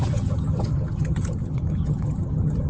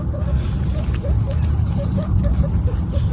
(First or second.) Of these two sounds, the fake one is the first